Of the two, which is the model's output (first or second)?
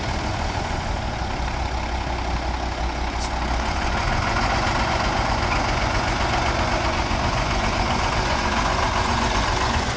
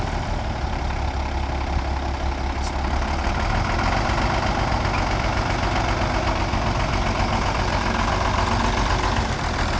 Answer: first